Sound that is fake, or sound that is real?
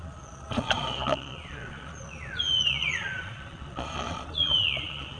fake